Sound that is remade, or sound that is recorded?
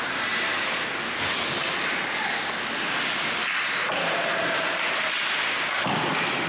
recorded